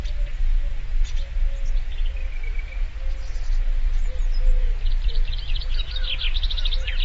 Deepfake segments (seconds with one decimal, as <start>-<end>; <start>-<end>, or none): none